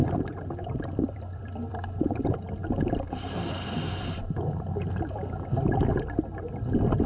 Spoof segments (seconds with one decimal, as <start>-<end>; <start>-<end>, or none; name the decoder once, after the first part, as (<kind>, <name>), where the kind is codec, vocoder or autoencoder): 0.0-2.2 (vocoder, BigVGAN v2); 2.6-6.0